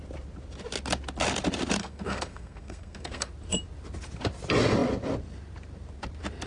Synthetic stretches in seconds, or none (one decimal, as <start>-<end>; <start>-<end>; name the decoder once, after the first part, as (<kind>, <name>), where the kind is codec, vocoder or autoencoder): 1.8-3.3 (codec, SNAC)